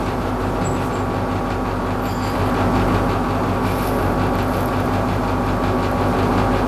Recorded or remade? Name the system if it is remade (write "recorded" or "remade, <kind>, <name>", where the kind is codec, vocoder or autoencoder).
recorded